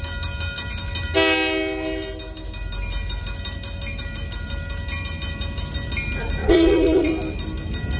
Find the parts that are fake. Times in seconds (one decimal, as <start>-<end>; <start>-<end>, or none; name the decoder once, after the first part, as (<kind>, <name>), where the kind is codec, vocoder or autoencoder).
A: 6.4-7.1 (vocoder, Vocos)